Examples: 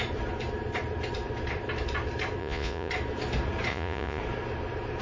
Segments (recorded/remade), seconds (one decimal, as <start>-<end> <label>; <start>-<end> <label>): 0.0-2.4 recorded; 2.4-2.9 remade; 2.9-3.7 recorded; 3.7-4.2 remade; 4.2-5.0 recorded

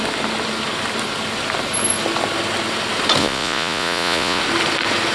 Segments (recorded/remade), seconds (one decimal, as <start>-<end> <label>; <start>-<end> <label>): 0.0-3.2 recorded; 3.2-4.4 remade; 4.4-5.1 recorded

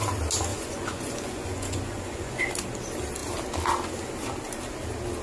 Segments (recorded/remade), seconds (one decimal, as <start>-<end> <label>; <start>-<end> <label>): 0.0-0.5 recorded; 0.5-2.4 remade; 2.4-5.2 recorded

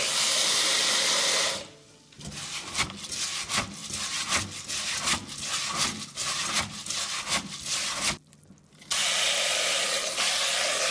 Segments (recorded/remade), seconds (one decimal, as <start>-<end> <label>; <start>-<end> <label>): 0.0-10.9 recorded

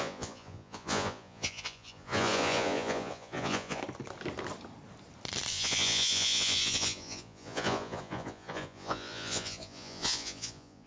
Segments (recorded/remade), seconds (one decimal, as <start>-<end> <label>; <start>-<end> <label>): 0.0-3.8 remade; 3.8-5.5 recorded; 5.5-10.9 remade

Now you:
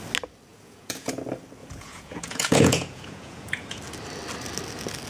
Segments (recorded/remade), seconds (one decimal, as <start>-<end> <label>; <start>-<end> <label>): 0.0-0.5 recorded; 0.5-1.1 remade; 1.1-1.6 recorded; 1.6-3.8 remade; 3.8-5.1 recorded

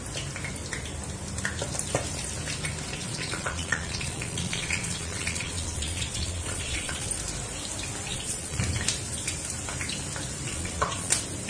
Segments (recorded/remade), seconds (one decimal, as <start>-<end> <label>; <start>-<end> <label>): 0.0-3.0 recorded; 3.0-7.1 remade; 7.1-8.1 recorded; 8.1-8.6 remade; 8.6-10.5 recorded; 10.5-11.1 remade; 11.1-11.5 recorded

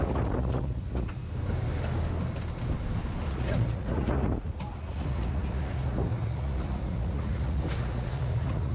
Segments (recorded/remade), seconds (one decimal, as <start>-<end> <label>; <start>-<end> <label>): 0.0-1.2 remade; 1.2-3.3 recorded; 3.3-8.7 remade